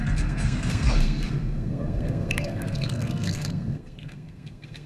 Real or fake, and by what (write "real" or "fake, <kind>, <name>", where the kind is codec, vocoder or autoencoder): fake, codec, SNAC